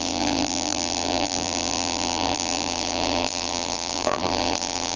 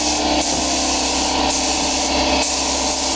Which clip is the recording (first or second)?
second